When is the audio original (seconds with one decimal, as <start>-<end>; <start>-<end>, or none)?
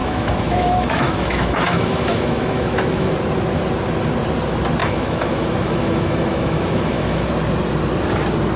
3.1-4.8; 7.3-8.6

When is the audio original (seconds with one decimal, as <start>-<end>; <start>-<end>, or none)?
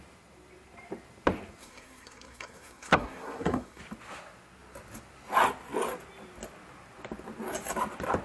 0.0-1.6; 3.8-8.2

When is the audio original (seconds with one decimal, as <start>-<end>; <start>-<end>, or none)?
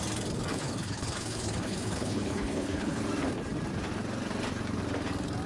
0.0-0.5; 3.0-5.5